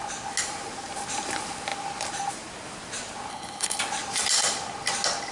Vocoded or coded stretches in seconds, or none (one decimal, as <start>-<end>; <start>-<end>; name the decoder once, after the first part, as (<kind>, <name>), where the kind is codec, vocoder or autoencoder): 3.3-3.8 (codec, HILCodec)